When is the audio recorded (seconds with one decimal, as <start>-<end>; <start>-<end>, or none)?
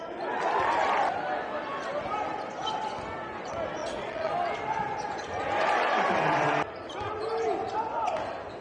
0.0-3.8; 4.3-8.6